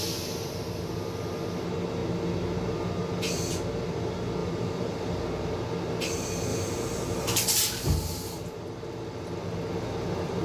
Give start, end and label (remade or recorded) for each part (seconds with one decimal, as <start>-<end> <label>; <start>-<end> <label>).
0.0-4.4 recorded; 4.4-5.2 remade; 5.2-6.5 recorded; 6.5-7.6 remade; 7.6-10.4 recorded